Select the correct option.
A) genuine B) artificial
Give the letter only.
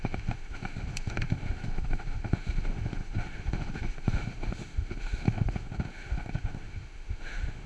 B